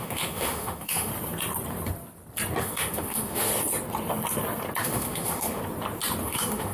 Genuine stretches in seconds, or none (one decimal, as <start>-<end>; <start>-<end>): 1.1-2.6; 3.5-4.8; 5.6-6.2